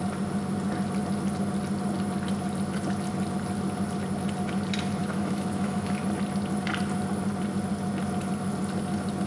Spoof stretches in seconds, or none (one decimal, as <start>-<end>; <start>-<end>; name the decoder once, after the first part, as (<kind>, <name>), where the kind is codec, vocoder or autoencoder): 5.0-6.0 (autoencoder, DAC-VAE)

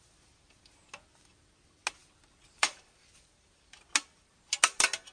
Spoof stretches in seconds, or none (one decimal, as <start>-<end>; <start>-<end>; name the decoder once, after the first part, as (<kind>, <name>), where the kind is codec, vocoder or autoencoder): 2.0-3.4 (vocoder, BigVGAN v2)

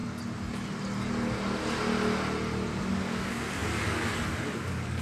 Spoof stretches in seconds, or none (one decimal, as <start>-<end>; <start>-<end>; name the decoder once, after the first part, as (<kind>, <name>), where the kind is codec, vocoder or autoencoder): 2.9-5.0 (codec, DAC)